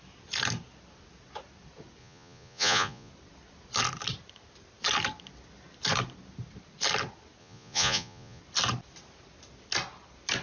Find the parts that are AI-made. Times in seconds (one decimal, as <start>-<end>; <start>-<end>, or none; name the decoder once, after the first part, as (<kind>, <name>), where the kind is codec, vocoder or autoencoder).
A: 2.0-3.1 (vocoder, Vocos); 7.4-8.4